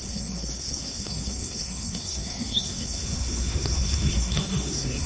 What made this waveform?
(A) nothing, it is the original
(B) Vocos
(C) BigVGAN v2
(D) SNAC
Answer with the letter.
D